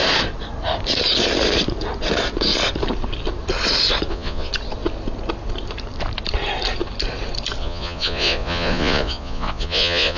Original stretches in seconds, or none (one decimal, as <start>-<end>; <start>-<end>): 0.0-4.1; 4.5-7.6

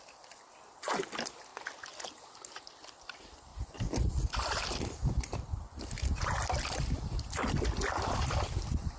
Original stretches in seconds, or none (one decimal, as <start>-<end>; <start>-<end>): 0.0-3.5; 6.1-9.0

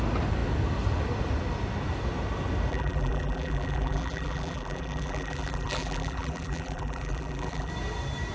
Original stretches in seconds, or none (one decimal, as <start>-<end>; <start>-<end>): 0.0-2.7; 7.7-8.3

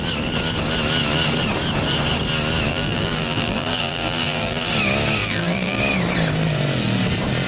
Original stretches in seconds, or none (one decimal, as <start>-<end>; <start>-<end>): 0.0-2.7; 4.7-5.2; 5.8-7.5

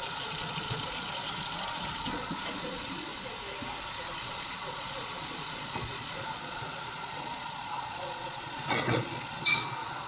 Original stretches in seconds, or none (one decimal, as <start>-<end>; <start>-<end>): 3.1-3.8

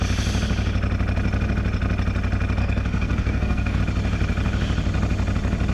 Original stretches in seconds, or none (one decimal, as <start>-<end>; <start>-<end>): 0.0-2.6; 3.8-5.7